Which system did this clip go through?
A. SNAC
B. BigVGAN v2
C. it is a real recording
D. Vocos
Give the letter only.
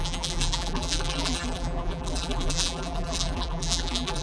B